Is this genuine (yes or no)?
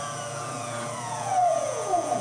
no